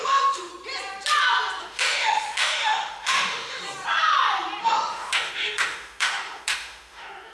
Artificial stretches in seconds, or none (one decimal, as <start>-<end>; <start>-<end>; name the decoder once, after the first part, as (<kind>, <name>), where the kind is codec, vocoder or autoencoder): 0.0-0.5 (autoencoder, DAC-VAE); 1.6-3.6; 4.6-7.3